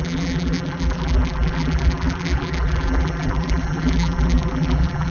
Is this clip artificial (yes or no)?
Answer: yes